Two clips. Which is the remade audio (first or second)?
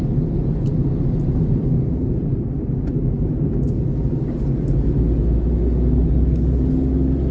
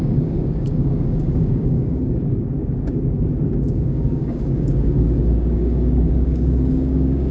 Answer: second